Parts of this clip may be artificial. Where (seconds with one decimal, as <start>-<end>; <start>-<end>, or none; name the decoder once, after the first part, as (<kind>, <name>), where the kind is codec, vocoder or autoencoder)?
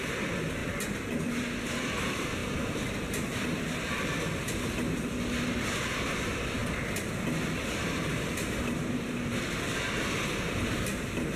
0.0-0.6 (vocoder, BigVGAN v2); 1.7-2.4; 5.6-6.6; 7.8-9.3; 10.3-11.4